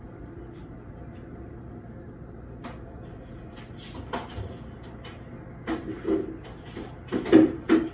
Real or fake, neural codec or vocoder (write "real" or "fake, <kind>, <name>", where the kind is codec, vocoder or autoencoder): real